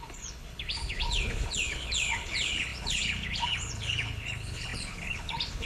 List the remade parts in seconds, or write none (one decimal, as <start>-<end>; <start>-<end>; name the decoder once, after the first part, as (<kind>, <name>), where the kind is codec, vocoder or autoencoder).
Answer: 0.0-5.7 (codec, HILCodec)